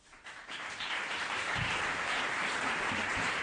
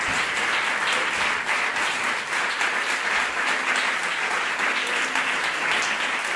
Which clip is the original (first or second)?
second